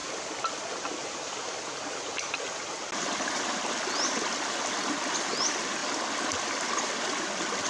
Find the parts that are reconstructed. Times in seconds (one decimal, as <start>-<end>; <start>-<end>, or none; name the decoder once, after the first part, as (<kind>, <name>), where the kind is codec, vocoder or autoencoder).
none